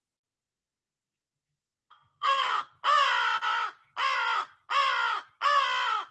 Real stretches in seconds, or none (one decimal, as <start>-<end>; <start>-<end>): 0.0-0.4; 2.6-6.1

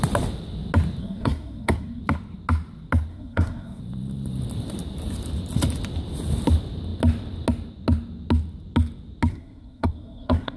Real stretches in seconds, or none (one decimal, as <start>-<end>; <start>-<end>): 0.0-1.0; 2.0-3.1; 3.8-9.3

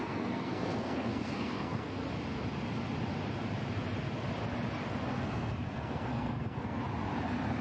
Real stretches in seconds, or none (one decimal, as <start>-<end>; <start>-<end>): 2.0-5.1; 6.8-7.6

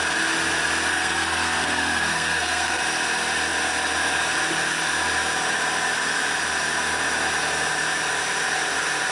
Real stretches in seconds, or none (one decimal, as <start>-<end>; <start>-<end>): 0.0-0.9; 2.8-9.1

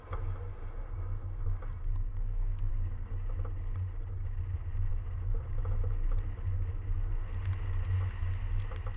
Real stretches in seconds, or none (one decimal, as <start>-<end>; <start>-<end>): 0.0-2.1; 2.7-9.0

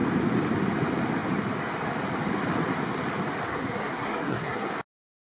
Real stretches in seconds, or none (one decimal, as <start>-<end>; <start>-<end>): 0.0-3.5; 4.7-5.3

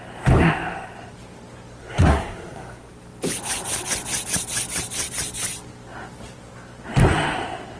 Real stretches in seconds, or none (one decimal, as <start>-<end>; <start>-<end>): 0.0-1.8; 2.9-7.8